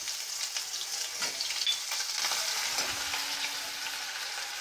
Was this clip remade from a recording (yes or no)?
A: no